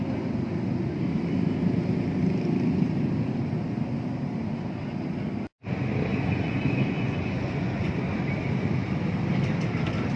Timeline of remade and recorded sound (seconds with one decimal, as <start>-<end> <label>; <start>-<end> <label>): 0.0-6.1 recorded; 6.1-7.9 remade; 7.9-10.2 recorded